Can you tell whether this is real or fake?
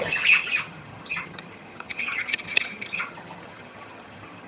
fake